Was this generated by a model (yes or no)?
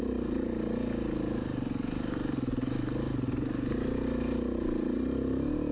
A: no